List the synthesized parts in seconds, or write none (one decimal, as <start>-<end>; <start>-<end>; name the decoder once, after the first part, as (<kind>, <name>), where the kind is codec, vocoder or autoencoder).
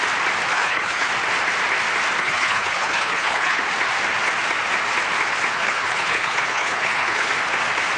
0.5-1.1 (codec, HILCodec); 2.2-3.6; 5.5-7.3